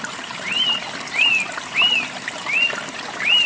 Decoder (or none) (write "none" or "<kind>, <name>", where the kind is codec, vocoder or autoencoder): none